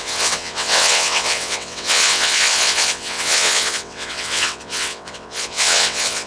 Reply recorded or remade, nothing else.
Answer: remade